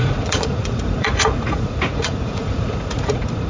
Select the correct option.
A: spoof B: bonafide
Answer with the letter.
A